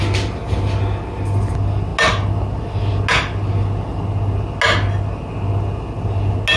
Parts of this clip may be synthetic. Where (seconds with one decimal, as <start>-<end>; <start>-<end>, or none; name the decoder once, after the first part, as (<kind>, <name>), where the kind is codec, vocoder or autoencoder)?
none